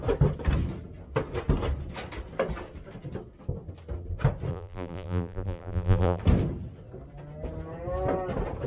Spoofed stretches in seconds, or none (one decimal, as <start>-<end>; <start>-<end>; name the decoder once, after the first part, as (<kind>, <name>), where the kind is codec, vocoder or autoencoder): 4.5-6.2 (vocoder, BigVGAN v2)